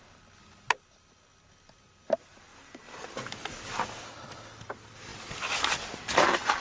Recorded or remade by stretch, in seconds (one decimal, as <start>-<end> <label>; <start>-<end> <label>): 0.0-6.6 recorded